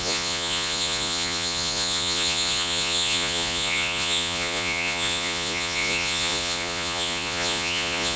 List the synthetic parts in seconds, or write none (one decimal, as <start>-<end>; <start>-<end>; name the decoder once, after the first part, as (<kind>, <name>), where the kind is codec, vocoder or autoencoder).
0.0-8.2 (vocoder, Vocos)